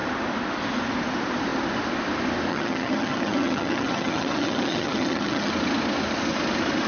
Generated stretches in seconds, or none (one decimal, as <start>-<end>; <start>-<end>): 2.5-5.5